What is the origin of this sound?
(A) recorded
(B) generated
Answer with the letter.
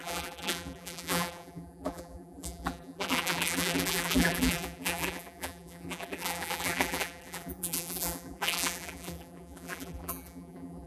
B